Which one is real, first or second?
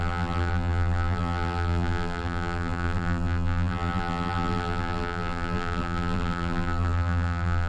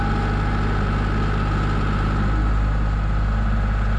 second